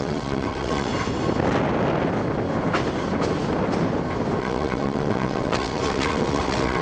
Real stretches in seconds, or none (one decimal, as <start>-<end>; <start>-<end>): 0.9-4.4